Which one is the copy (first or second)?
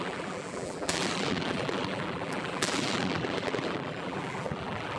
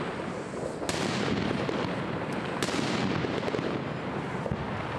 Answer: first